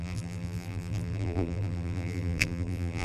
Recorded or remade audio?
remade